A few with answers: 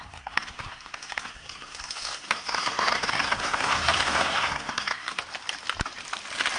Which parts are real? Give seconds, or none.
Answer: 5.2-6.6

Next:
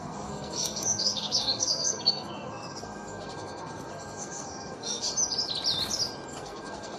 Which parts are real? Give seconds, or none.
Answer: 5.1-6.3

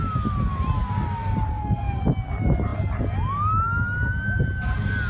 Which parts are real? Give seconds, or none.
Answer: 0.0-1.5; 2.0-5.1

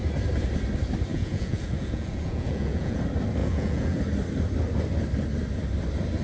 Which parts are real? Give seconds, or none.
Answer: 0.0-1.1; 3.0-3.4; 4.0-6.2

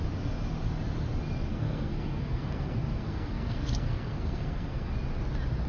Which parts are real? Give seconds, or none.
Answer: 0.0-1.5; 4.9-5.7

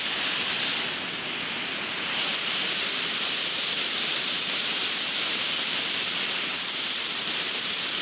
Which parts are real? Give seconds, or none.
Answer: 6.5-7.1

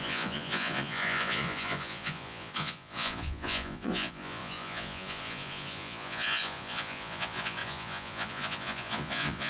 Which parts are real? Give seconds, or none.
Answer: none

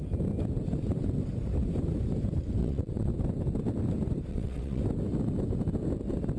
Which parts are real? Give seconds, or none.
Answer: 0.0-2.6; 3.1-4.3; 4.8-6.4